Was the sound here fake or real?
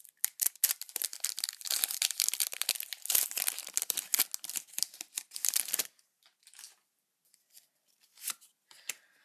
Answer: real